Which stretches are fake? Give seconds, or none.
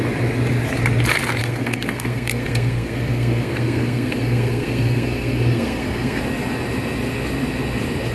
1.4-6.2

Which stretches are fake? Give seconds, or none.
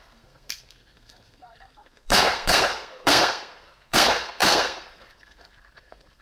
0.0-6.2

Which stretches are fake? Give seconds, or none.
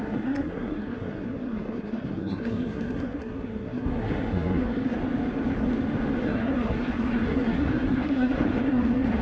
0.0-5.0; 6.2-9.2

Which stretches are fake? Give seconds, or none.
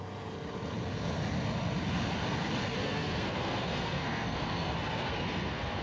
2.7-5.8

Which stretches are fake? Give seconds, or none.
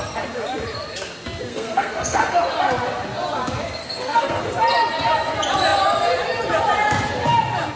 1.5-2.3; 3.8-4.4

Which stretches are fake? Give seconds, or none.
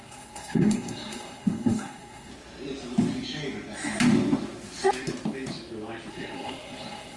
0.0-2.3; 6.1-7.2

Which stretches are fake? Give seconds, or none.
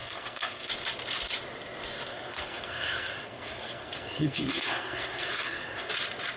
0.0-0.7; 2.1-5.9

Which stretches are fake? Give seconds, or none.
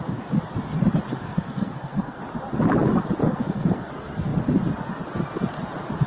1.1-2.2; 3.2-3.9